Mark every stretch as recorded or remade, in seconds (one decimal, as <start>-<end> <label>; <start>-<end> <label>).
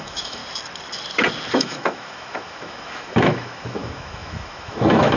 0.0-0.4 remade; 0.4-1.5 recorded; 1.5-5.2 remade